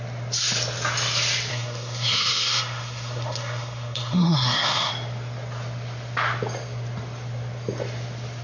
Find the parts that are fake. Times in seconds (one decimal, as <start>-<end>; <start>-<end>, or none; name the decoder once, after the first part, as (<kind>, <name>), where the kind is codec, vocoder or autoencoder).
1.5-4.9 (codec, SNAC)